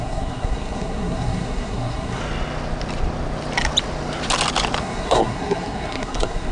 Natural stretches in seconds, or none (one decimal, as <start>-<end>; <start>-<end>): 2.2-4.8